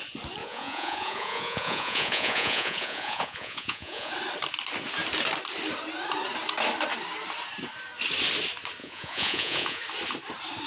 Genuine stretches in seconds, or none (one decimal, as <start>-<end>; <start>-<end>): 0.0-0.4; 4.1-8.8; 9.8-10.7